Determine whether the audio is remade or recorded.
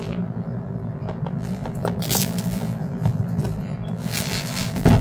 remade